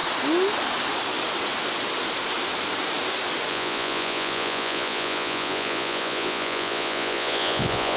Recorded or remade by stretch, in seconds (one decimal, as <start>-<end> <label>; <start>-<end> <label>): 0.0-3.5 recorded; 3.5-8.0 remade